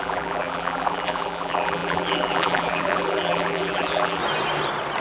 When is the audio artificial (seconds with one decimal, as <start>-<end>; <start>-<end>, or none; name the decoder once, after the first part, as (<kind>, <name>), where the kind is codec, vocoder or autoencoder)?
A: 0.0-4.2 (vocoder, BigVGAN v2)